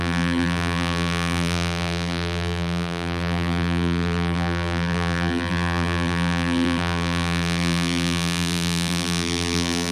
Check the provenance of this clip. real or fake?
fake